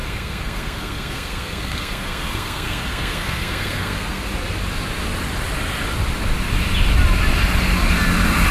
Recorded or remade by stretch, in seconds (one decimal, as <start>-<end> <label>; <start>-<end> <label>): 0.0-4.3 remade; 4.3-8.5 recorded

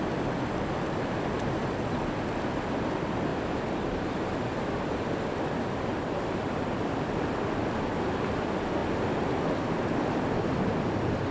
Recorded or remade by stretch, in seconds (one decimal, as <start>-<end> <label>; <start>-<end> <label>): 0.0-11.3 recorded